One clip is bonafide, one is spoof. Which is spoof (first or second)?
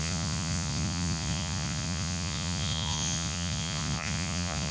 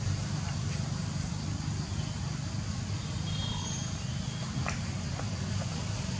first